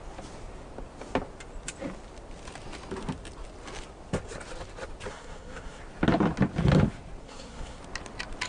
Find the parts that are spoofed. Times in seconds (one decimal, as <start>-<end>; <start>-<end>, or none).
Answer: 5.1-5.8; 7.2-7.8